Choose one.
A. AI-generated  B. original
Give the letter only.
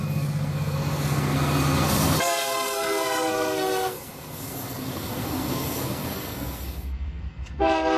A